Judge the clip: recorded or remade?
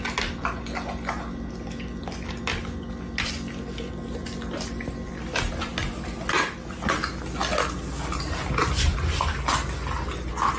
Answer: recorded